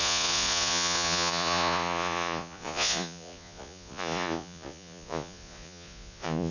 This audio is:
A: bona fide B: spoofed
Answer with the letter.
B